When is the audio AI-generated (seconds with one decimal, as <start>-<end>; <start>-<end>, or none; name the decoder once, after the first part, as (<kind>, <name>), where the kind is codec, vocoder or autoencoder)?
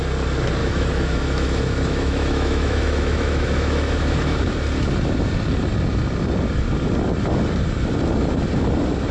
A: 0.6-4.4 (autoencoder, DAC-VAE)